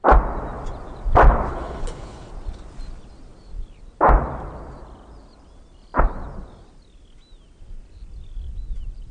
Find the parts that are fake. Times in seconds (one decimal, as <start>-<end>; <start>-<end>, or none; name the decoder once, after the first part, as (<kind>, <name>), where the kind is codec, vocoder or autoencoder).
1.5-2.3 (codec, HILCodec)